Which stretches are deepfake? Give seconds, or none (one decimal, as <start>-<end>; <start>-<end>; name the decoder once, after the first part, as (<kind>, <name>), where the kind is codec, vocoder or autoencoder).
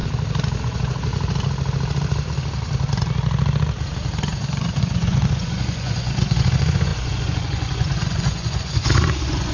0.6-1.1 (vocoder, Vocos); 4.4-9.5